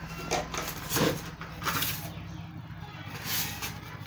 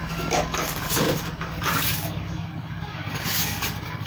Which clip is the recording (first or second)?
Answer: first